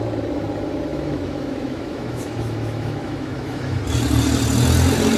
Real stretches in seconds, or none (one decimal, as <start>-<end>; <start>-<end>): 0.0-0.9; 3.8-5.2